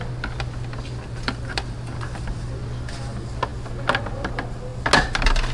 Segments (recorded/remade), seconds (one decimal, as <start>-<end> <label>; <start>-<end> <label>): 0.0-5.5 recorded